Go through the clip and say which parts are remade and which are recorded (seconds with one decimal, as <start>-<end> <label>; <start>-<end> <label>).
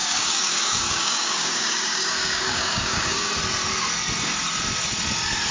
0.0-3.3 remade; 3.3-5.5 recorded